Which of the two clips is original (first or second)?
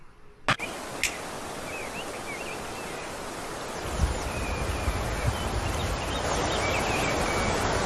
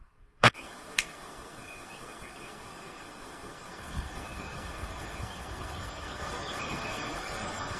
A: first